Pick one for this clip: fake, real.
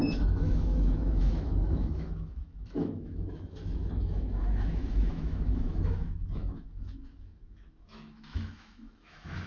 fake